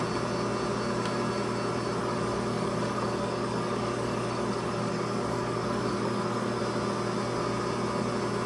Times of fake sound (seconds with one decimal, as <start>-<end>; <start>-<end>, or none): 2.0-6.6